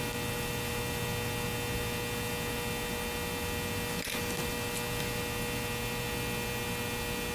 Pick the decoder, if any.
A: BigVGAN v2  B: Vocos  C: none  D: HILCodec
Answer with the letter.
C